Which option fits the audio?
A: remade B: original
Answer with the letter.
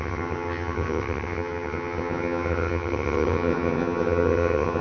A